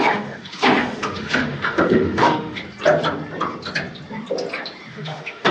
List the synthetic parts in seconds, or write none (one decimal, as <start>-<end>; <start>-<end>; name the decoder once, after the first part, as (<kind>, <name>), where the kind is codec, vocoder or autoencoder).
0.0-2.6 (autoencoder, DAC-VAE); 4.9-5.5